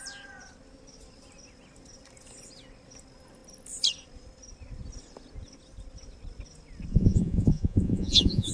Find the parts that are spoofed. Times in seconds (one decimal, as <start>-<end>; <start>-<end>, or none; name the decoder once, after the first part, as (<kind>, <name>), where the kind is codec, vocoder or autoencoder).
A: 6.9-8.5 (vocoder, Vocos)